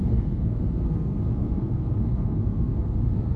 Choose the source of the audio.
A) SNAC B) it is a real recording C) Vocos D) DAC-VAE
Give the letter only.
A